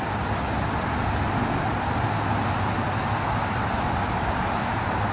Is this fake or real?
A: real